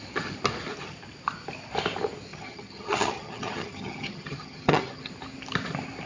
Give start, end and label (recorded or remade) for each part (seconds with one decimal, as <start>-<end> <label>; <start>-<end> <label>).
0.0-2.3 recorded; 2.3-5.1 remade; 5.1-6.1 recorded